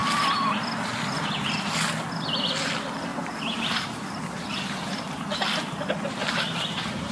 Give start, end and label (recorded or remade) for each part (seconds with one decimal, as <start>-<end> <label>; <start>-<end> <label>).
0.0-3.1 recorded; 3.1-5.0 remade; 5.0-6.2 recorded; 6.2-7.1 remade

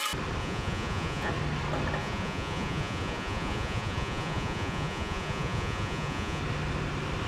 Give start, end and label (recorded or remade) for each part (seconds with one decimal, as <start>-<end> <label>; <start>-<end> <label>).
0.0-0.4 recorded; 0.4-1.3 remade; 1.3-2.0 recorded; 2.0-6.4 remade; 6.4-7.3 recorded

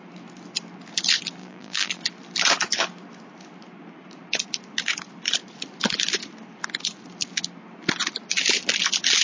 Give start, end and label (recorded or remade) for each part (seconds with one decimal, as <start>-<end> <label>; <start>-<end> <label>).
0.0-1.4 recorded; 1.4-2.0 remade; 2.0-9.2 recorded

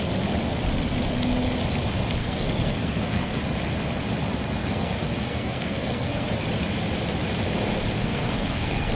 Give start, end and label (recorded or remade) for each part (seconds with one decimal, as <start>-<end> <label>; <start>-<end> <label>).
0.0-2.2 recorded; 2.2-3.4 remade; 3.4-4.6 recorded; 4.6-6.3 remade; 6.3-8.0 recorded; 8.0-8.9 remade

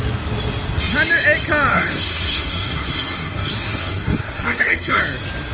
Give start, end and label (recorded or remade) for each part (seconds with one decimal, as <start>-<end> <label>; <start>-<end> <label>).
0.0-1.7 recorded; 1.7-5.0 remade; 5.0-5.5 recorded

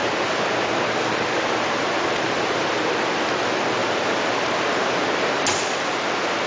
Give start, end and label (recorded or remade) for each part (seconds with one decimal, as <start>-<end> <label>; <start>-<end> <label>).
0.0-2.5 remade; 2.5-3.8 recorded; 3.8-4.9 remade; 4.9-6.5 recorded

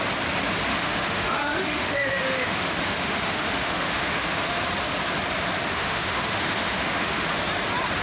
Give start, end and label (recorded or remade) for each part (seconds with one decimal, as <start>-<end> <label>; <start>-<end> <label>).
0.0-0.7 recorded; 0.7-4.6 remade; 4.6-5.7 recorded; 5.7-7.3 remade; 7.3-8.0 recorded

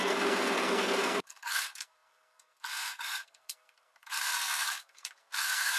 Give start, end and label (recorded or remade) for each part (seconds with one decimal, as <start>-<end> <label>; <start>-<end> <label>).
0.0-5.8 remade